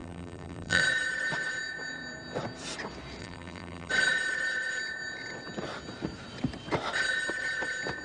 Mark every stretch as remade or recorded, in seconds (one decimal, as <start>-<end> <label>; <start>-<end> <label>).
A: 0.0-0.8 remade; 0.8-3.2 recorded; 3.2-3.9 remade; 3.9-8.0 recorded